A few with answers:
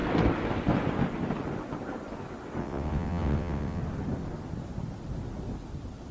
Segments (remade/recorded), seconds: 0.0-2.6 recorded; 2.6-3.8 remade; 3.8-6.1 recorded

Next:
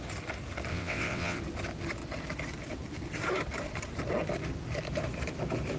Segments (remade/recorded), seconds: 0.0-0.7 recorded; 0.7-1.4 remade; 1.4-5.8 recorded